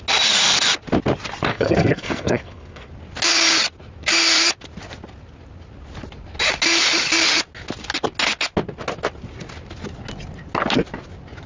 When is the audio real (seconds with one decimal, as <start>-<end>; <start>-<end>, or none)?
0.0-1.5; 2.9-11.5